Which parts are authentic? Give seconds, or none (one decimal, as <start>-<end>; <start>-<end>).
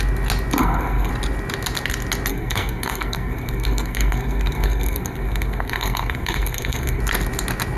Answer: 0.0-0.6; 1.1-2.3; 7.0-7.8